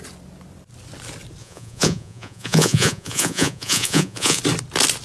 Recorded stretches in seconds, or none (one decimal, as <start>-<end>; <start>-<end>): 0.0-1.4; 4.4-5.0